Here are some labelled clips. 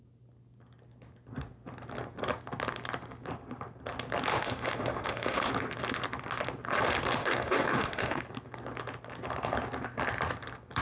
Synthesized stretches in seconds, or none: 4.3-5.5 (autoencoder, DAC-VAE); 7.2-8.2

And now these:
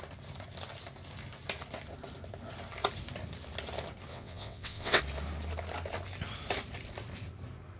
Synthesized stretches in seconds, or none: 4.1-5.0 (vocoder, WaveNeXt)

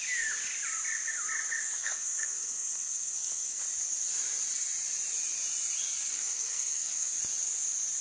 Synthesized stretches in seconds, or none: 1.8-3.6 (codec, SNAC); 6.1-7.2

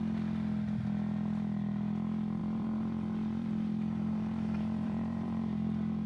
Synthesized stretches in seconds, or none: 2.4-6.1 (vocoder, BigVGAN v2)